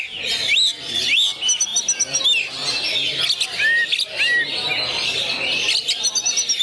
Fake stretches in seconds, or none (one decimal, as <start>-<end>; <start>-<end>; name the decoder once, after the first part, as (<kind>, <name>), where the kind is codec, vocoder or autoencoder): none